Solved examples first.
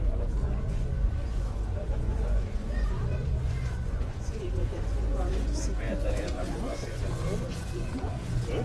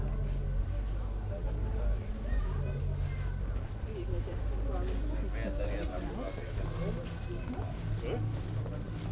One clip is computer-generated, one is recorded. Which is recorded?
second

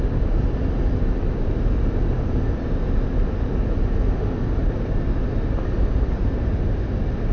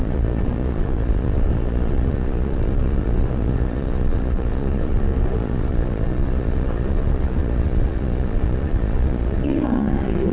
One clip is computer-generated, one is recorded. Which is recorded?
first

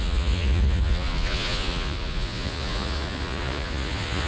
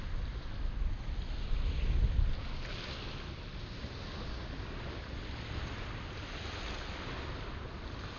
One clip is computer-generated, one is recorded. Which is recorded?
second